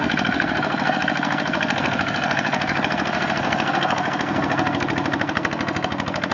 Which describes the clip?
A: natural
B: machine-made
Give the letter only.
B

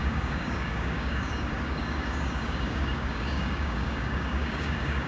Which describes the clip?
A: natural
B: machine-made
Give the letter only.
B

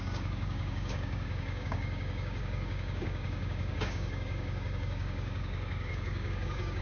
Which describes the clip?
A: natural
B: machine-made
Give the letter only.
B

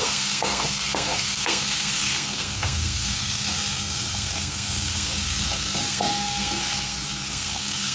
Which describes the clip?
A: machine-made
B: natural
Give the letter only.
A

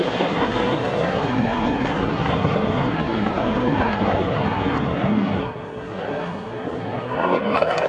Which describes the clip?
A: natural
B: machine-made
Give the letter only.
B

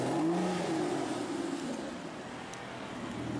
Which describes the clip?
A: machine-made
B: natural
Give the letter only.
B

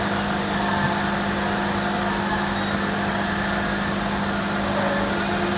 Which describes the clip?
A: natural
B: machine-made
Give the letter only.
A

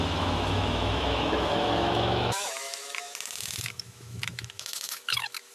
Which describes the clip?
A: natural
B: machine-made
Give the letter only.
B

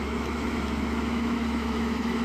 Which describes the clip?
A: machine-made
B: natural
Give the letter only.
A